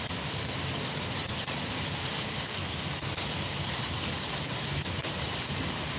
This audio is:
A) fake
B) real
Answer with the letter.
A